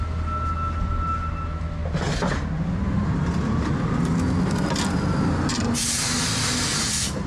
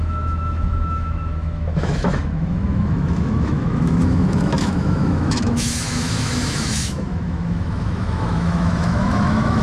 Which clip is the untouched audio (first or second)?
first